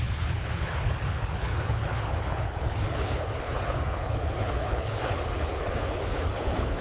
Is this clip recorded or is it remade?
remade